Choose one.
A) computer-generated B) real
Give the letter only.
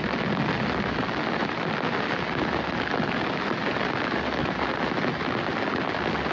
B